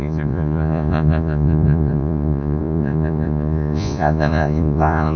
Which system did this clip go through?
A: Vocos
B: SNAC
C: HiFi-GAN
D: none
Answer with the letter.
A